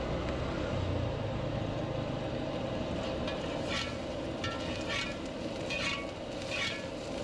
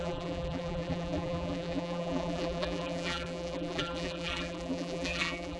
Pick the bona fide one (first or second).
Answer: first